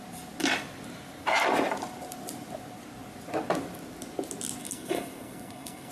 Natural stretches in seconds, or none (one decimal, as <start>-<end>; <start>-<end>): 0.0-4.6